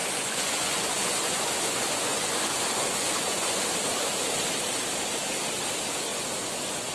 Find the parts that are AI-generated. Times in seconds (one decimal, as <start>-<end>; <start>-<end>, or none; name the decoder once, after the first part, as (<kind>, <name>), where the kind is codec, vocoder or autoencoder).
0.0-3.6 (vocoder, Vocos); 6.1-6.9